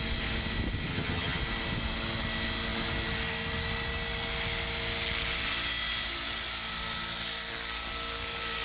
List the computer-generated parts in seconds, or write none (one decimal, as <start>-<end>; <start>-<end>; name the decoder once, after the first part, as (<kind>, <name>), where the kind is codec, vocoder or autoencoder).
0.9-1.4 (vocoder, HiFi-GAN)